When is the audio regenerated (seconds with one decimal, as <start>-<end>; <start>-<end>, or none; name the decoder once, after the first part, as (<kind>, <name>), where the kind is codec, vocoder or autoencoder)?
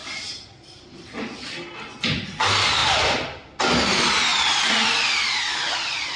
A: none